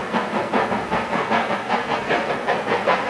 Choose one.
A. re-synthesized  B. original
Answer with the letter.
A